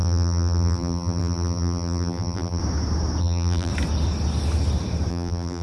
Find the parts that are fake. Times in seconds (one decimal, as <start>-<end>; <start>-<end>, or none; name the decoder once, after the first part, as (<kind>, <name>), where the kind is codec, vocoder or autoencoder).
0.0-2.6 (vocoder, BigVGAN v2); 3.2-3.7; 5.1-5.6